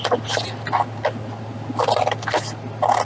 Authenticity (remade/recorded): recorded